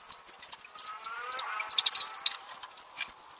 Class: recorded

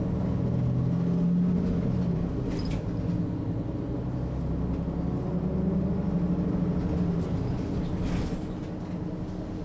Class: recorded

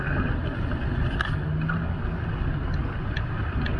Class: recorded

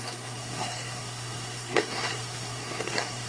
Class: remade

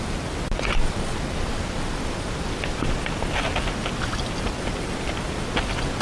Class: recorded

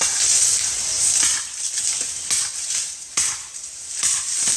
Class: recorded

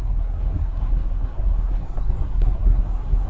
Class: remade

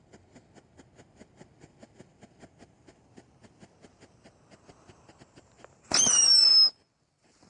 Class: recorded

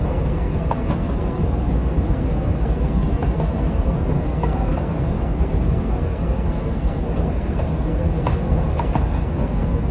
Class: remade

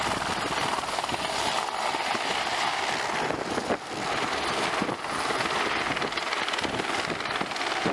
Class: recorded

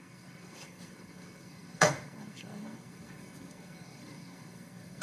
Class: remade